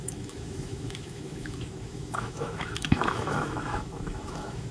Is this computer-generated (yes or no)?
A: yes